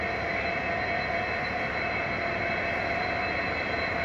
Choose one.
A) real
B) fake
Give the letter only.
A